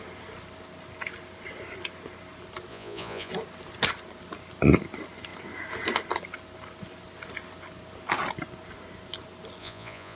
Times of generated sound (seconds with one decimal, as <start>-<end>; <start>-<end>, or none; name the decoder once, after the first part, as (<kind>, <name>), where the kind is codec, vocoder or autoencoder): 2.7-3.3 (vocoder, Vocos); 9.6-10.2